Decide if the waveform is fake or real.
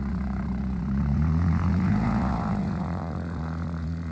fake